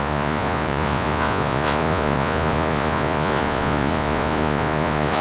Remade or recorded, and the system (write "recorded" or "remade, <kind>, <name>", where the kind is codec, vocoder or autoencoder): remade, vocoder, Vocos